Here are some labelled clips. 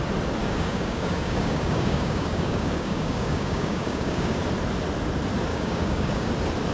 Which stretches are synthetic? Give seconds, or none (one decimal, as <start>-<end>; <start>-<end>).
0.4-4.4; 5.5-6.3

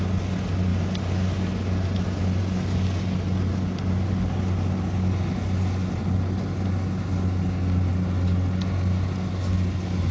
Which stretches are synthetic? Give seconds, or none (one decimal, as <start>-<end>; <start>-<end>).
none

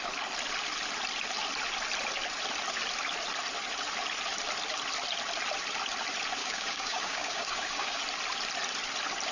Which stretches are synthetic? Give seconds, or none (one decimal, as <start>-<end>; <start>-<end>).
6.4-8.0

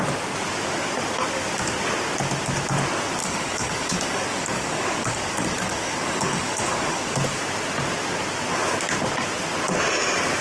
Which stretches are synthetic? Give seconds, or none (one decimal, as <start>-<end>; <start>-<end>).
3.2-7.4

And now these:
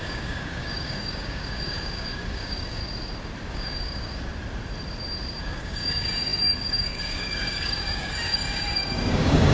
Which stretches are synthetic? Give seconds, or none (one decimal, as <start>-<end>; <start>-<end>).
0.0-2.8; 3.5-4.3; 5.4-9.5

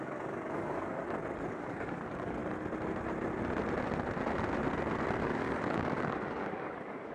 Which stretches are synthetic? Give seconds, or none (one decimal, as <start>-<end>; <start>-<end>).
0.0-1.0; 1.5-2.4; 5.2-7.1

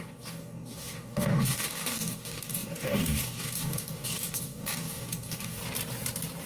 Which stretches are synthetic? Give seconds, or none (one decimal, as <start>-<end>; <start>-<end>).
0.0-5.6

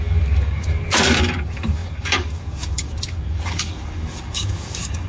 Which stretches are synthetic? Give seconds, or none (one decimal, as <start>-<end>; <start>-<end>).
0.0-5.1